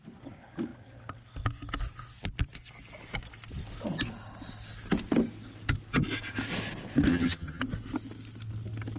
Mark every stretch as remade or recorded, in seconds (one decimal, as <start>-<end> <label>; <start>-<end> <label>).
0.0-7.1 recorded; 7.1-7.6 remade; 7.6-9.0 recorded